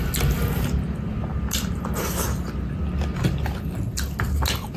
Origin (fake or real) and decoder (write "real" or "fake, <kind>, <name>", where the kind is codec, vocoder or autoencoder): real